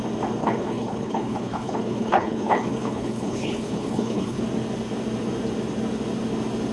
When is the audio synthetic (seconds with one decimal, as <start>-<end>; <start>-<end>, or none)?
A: 0.4-4.4